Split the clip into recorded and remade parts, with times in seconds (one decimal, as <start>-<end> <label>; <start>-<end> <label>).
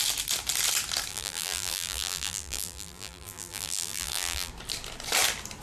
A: 0.0-1.1 recorded; 1.1-4.5 remade; 4.5-5.6 recorded